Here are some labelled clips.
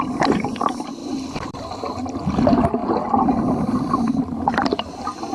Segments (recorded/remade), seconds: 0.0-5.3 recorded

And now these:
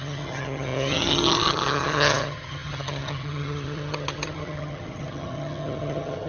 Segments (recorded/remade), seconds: 0.0-6.3 remade

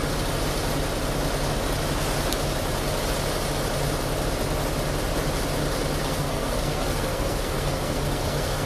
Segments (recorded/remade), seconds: 0.0-6.0 recorded; 6.0-8.7 remade

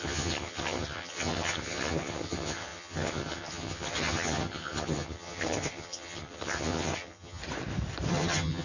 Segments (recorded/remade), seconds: 0.0-7.4 remade; 7.4-8.1 recorded; 8.1-8.6 remade

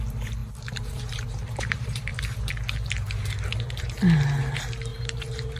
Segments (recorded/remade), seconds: 0.0-0.4 recorded; 0.4-2.5 remade; 2.5-4.9 recorded; 4.9-5.6 remade

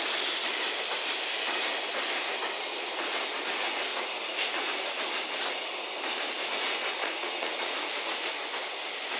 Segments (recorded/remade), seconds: 0.0-3.9 recorded; 3.9-4.7 remade; 4.7-7.0 recorded; 7.0-8.3 remade; 8.3-9.2 recorded

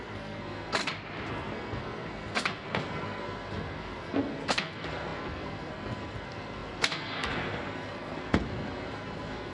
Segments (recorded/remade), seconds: 0.0-0.8 remade; 0.8-1.3 recorded; 1.3-9.5 remade